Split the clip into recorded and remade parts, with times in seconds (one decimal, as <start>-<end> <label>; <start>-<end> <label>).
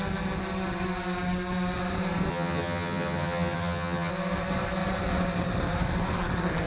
0.0-2.3 recorded; 2.3-4.1 remade; 4.1-6.7 recorded